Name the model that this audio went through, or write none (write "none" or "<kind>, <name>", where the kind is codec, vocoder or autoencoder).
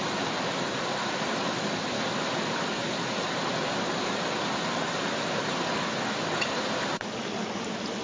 none